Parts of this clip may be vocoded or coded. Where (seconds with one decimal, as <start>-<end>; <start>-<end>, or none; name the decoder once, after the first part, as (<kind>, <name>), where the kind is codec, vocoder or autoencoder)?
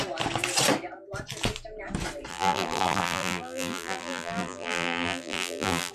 2.3-5.9 (vocoder, BigVGAN v2)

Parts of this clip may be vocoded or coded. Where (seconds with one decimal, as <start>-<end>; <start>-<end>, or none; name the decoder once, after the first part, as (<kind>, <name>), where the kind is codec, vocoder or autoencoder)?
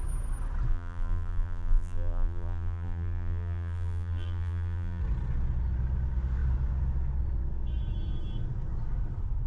0.7-5.0 (vocoder, BigVGAN v2)